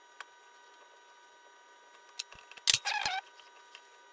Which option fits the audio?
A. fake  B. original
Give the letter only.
B